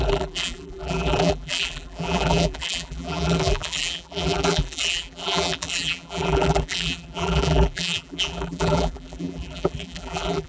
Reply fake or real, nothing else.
fake